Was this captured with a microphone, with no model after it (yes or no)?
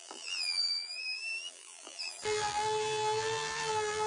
no